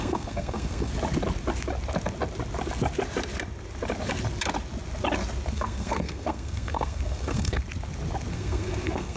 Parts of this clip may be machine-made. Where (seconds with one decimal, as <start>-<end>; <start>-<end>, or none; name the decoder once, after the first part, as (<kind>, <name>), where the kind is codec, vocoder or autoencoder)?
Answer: 0.0-0.9 (codec, SNAC); 5.5-7.6; 8.3-9.2